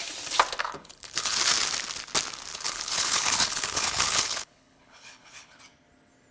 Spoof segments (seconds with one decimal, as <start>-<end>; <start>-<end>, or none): 0.6-1.4; 2.5-5.6